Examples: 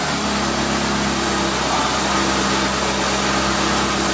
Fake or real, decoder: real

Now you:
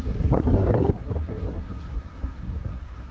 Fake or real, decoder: fake, codec, SNAC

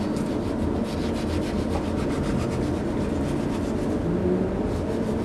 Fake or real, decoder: real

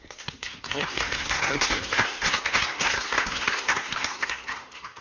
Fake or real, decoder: fake, codec, SNAC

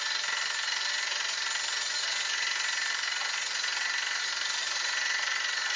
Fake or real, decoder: real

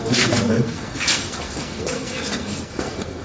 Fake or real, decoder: fake, codec, SNAC